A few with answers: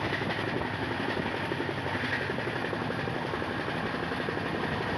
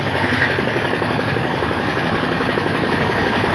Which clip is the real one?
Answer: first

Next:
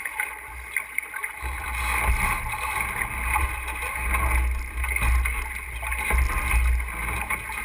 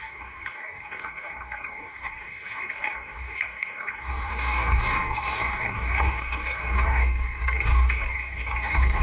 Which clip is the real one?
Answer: first